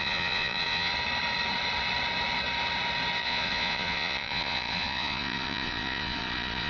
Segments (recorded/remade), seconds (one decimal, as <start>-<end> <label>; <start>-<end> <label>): 0.0-0.9 remade; 0.9-3.2 recorded; 3.2-6.7 remade